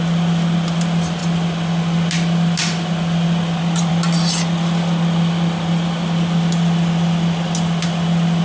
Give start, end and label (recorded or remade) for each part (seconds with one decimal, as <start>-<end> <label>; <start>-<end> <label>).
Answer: 0.0-8.4 recorded

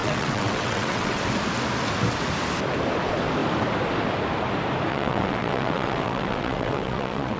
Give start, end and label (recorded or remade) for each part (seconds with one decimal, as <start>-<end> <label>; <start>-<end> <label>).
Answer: 0.0-1.2 remade; 1.2-4.9 recorded; 4.9-7.4 remade

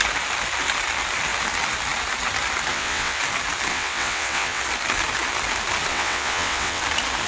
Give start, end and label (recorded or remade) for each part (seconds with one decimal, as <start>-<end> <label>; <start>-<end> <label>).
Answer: 0.0-2.7 recorded; 2.7-3.2 remade; 3.2-3.7 recorded; 3.7-4.6 remade; 4.6-5.9 recorded; 5.9-6.8 remade; 6.8-7.3 recorded

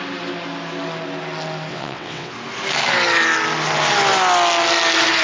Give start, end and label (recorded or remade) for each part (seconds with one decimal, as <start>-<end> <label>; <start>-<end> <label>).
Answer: 0.0-1.7 recorded; 1.7-2.3 remade; 2.3-5.2 recorded

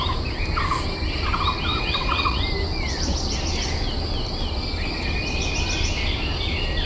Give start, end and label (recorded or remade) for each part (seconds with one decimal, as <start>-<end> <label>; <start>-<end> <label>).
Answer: 0.0-1.7 recorded; 1.7-2.4 remade; 2.4-6.9 recorded

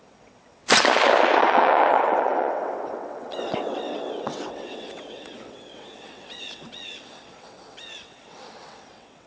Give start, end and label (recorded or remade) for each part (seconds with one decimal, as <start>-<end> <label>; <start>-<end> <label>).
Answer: 0.0-0.6 remade; 0.6-1.4 recorded; 1.4-9.3 remade